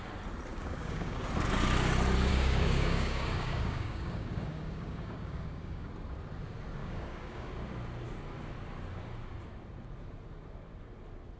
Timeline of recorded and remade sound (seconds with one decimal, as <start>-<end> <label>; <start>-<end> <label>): 0.0-0.5 recorded; 0.5-1.2 remade; 1.2-2.3 recorded; 2.3-5.9 remade; 5.9-6.8 recorded; 6.8-7.5 remade; 7.5-11.4 recorded